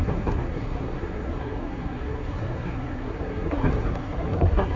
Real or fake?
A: fake